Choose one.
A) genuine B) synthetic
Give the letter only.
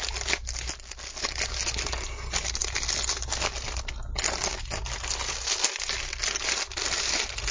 A